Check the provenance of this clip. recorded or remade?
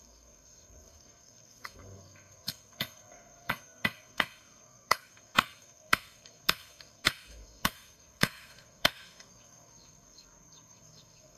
remade